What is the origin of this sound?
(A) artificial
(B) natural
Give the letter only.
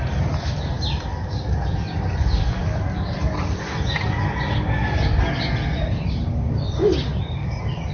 B